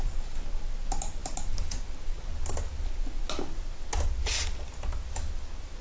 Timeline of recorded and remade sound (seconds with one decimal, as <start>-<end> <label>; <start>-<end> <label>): 0.0-5.8 recorded